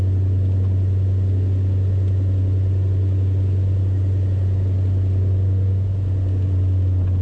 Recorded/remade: recorded